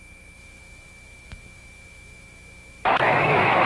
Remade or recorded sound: remade